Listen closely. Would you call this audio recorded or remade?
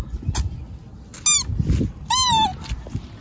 recorded